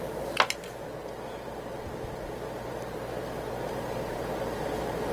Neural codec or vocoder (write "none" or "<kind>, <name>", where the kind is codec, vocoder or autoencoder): none